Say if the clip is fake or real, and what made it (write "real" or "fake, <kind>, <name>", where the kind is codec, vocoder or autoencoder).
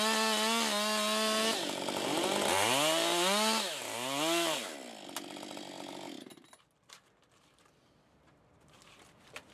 real